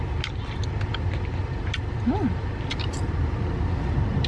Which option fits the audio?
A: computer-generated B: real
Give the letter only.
B